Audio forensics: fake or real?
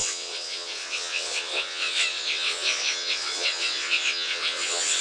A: fake